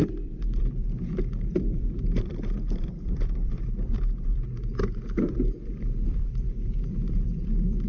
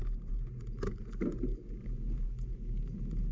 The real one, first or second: second